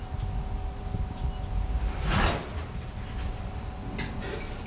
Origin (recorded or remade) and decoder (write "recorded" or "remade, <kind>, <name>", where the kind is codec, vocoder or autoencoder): recorded